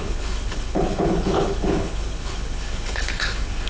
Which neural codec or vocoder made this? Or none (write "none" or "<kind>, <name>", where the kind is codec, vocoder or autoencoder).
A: codec, HILCodec